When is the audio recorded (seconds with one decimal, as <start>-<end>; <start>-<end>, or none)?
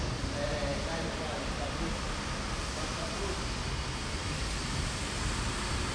0.0-5.9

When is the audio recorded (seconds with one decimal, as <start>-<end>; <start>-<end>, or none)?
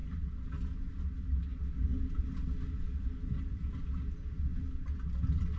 0.0-5.6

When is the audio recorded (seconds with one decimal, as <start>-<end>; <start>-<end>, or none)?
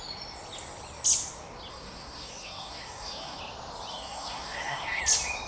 0.0-1.7; 3.4-3.9; 5.0-5.5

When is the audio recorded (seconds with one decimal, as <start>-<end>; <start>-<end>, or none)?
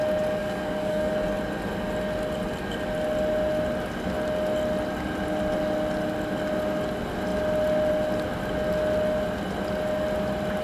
0.0-0.4; 1.1-10.6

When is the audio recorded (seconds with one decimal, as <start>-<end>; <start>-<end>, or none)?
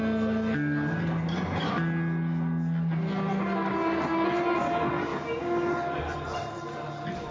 0.0-5.1; 5.7-7.3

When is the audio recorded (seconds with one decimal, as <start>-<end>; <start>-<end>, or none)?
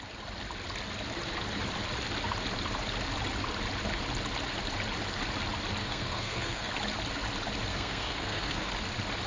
0.0-5.8; 6.7-7.7; 8.7-9.3